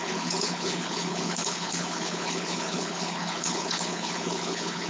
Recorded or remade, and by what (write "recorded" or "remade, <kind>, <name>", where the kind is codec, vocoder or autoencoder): remade, codec, HILCodec